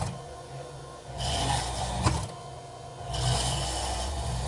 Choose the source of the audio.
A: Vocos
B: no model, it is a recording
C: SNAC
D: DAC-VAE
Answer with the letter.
A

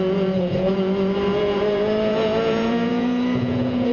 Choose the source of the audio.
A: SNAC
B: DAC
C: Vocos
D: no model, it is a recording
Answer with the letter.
C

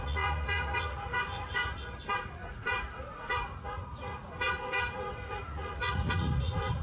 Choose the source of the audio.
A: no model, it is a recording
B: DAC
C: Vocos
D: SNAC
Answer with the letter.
C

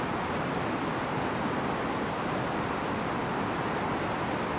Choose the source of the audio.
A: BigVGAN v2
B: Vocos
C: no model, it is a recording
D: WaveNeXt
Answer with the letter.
C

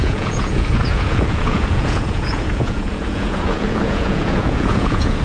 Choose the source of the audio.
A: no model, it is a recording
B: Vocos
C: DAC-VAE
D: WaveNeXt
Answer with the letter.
B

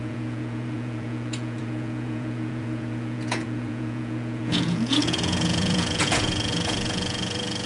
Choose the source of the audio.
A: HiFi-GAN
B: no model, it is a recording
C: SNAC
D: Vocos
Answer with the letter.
D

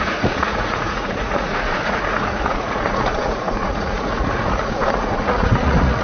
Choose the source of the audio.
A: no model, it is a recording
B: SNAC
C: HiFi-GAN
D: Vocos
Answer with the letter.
D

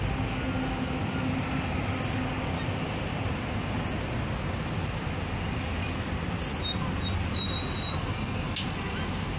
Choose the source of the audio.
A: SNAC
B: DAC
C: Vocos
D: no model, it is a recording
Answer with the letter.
D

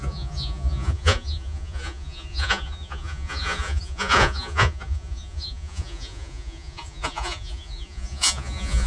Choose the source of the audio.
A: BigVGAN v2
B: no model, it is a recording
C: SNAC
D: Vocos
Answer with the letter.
D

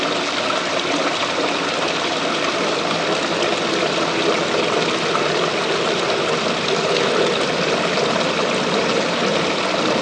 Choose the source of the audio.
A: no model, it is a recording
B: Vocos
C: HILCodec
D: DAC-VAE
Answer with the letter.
A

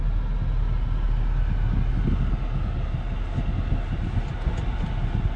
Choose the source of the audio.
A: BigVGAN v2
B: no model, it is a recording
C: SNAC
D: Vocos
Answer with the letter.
B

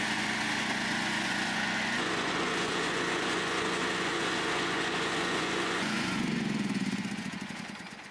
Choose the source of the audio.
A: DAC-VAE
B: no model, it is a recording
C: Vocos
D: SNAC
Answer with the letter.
C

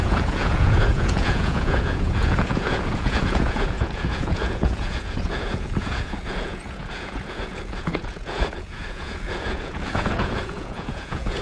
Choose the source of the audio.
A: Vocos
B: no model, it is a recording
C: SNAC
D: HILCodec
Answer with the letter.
A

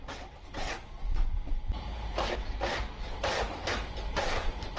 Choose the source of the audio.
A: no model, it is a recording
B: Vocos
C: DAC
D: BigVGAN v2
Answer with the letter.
A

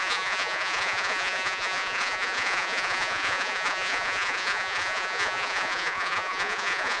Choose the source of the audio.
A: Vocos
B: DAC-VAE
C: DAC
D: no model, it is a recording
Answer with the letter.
A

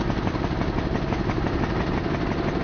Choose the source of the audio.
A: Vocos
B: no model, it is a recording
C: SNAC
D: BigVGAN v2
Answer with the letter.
B